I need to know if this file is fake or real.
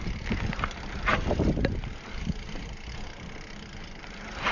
real